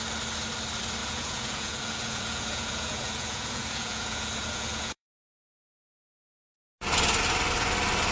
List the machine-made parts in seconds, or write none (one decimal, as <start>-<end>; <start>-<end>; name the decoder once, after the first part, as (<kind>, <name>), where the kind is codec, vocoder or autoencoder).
1.0-5.6 (vocoder, Vocos)